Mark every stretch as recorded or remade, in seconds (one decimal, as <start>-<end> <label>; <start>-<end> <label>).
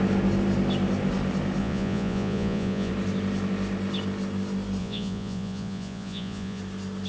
0.0-1.6 recorded; 1.6-2.9 remade; 2.9-4.8 recorded; 4.8-6.6 remade; 6.6-7.1 recorded